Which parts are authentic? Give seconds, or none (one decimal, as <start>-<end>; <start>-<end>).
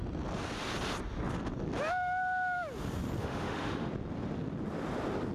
0.0-3.2; 3.9-5.3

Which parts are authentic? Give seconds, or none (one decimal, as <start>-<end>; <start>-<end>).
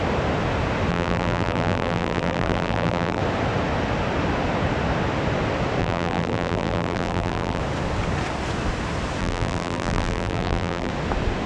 0.0-0.9; 3.2-5.8; 7.6-9.2; 10.9-11.5